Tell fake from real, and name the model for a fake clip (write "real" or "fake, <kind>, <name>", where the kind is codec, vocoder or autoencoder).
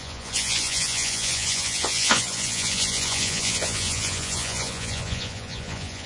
fake, vocoder, Vocos